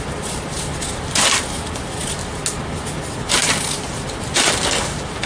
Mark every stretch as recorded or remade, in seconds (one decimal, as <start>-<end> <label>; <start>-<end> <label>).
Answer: 0.0-5.3 recorded